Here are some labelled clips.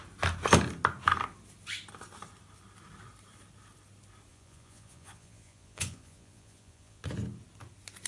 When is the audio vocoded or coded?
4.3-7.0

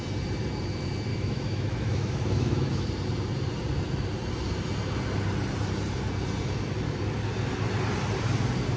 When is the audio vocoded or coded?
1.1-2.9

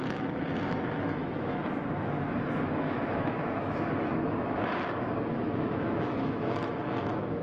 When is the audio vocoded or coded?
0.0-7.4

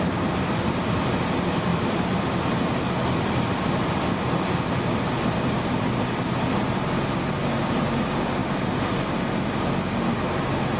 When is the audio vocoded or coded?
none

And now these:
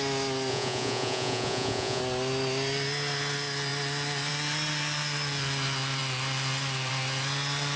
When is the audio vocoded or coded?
0.5-2.0

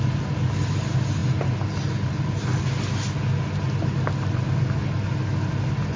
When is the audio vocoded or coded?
none

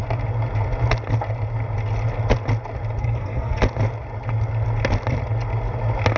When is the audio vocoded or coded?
3.0-3.6